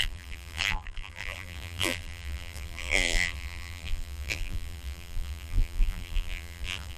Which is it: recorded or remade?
remade